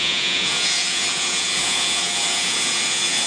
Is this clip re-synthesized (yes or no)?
yes